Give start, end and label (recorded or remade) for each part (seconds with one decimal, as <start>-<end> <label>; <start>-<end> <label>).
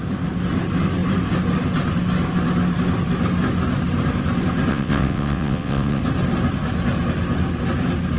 0.0-4.7 recorded; 4.7-6.0 remade; 6.0-8.2 recorded